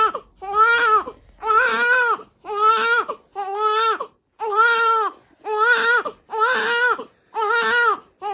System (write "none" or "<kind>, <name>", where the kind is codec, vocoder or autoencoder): none